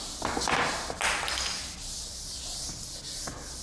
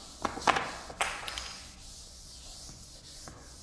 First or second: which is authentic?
first